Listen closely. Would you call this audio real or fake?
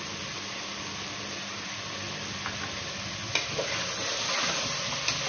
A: real